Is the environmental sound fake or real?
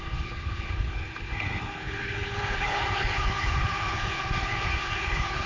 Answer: fake